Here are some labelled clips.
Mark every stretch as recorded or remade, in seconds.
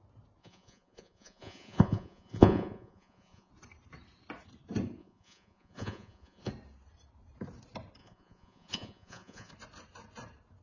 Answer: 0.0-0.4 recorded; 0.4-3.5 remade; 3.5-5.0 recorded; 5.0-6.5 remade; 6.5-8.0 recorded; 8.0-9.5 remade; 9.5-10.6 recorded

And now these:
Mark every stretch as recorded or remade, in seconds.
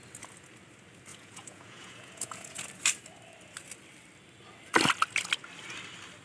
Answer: 0.0-1.1 recorded; 1.1-2.6 remade; 2.6-6.2 recorded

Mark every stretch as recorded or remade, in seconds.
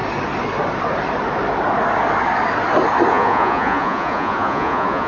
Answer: 0.0-3.1 recorded; 3.1-5.1 remade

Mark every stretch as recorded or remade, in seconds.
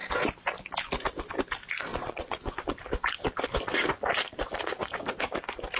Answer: 0.0-1.9 recorded; 1.9-2.6 remade; 2.6-5.8 recorded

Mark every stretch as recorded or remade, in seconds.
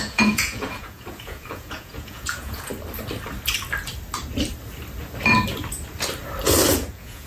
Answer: 0.0-2.7 remade; 2.7-6.7 recorded; 6.7-7.3 remade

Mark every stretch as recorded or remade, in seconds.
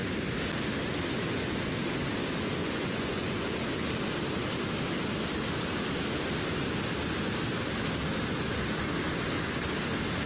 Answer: 0.0-2.6 recorded; 2.6-3.6 remade; 3.6-10.3 recorded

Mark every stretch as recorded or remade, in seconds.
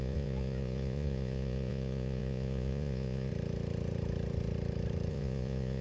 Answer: 0.0-3.3 remade; 3.3-5.1 recorded; 5.1-5.8 remade